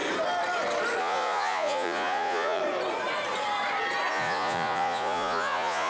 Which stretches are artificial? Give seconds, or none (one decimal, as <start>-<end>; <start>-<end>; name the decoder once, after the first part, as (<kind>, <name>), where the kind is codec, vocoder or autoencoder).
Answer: 1.0-2.6 (vocoder, Vocos); 4.1-5.9